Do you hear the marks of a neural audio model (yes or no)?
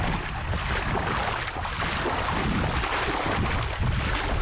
no